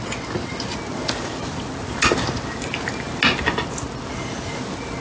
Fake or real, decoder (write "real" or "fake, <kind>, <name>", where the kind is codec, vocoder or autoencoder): real